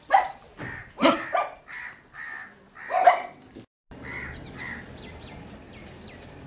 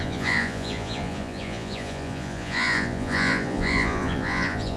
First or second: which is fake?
second